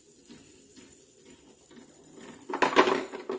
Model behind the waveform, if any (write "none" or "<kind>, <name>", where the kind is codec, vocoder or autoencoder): none